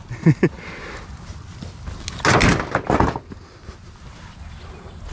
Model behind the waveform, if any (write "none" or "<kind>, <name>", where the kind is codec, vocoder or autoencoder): none